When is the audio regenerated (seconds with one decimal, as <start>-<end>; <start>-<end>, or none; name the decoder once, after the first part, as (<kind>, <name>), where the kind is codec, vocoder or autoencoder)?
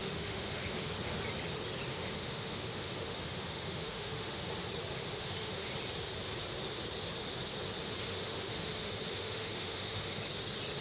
0.0-0.9 (autoencoder, DAC-VAE); 1.9-4.5; 5.1-5.7; 8.0-10.2